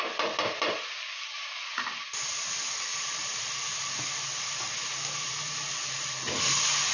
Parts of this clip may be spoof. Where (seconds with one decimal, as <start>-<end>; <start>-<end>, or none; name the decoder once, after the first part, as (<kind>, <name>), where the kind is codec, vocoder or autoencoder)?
none